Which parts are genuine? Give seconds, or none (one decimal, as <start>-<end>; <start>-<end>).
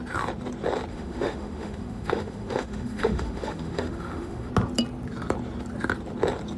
0.0-0.9; 4.5-6.6